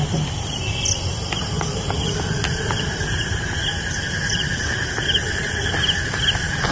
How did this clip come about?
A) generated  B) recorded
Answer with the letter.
B